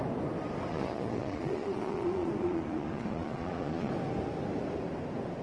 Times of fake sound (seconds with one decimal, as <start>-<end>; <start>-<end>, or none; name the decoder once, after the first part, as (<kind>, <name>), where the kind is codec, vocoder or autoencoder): 0.7-3.9 (vocoder, Vocos)